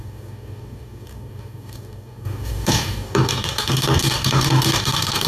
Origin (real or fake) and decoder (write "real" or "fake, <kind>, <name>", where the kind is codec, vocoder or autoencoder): fake, codec, DAC